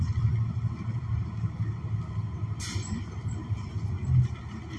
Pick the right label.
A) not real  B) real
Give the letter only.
B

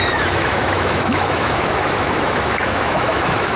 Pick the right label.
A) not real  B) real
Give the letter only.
A